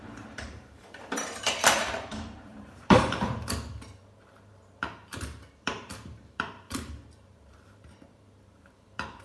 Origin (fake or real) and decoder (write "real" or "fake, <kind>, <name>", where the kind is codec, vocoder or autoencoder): fake, vocoder, BigVGAN v2